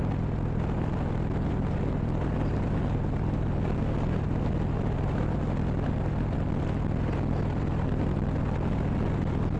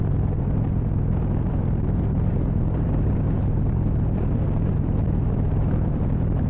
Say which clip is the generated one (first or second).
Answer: second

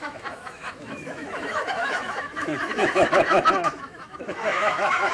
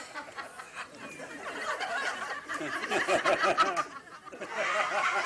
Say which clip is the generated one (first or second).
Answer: first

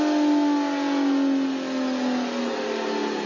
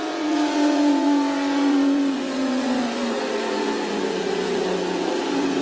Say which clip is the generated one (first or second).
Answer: second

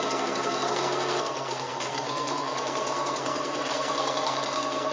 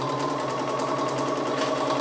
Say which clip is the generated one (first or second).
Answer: first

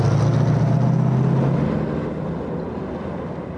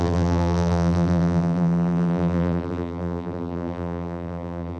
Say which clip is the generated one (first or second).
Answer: second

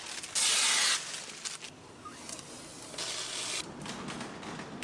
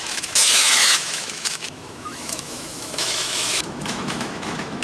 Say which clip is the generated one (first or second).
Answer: second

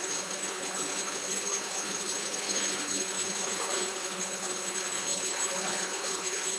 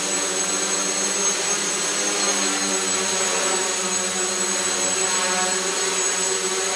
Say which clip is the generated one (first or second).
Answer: first